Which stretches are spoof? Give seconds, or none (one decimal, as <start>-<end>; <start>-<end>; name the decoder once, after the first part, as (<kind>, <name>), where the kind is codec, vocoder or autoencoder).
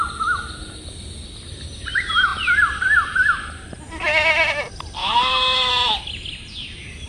5.0-5.7 (autoencoder, DAC-VAE)